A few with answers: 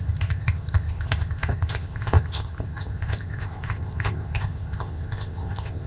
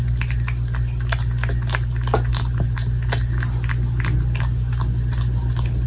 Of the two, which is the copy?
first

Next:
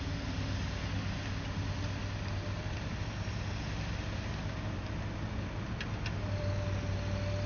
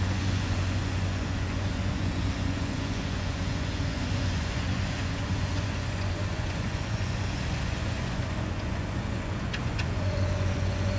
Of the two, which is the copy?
second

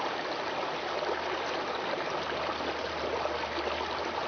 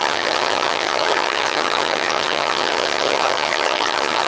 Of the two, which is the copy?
second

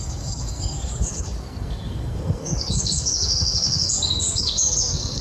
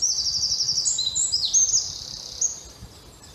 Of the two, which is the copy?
first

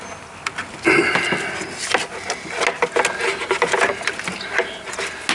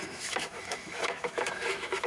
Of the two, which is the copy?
second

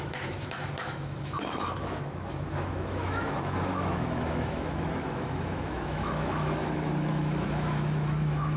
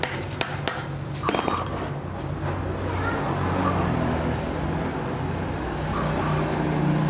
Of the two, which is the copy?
first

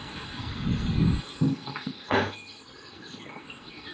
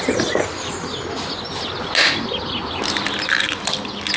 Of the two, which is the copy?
first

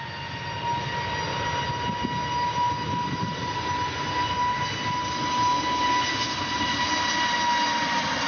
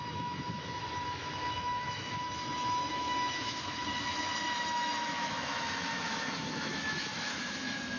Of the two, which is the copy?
second